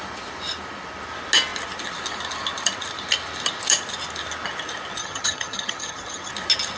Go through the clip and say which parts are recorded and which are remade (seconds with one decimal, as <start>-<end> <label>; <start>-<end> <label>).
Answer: 0.0-5.0 recorded; 5.0-6.3 remade; 6.3-6.8 recorded